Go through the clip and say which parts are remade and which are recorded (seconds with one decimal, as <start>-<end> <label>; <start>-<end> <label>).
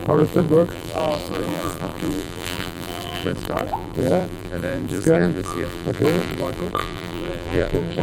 0.0-8.0 remade